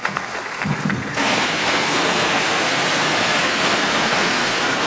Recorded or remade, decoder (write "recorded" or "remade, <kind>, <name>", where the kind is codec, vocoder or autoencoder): remade, codec, SNAC